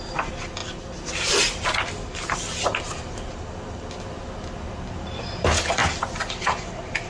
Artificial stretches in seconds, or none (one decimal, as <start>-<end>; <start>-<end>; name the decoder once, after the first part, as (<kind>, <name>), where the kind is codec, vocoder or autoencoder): none